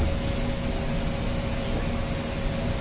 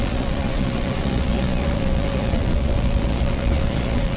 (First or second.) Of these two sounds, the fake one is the second